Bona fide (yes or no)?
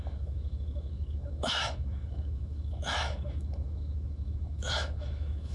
no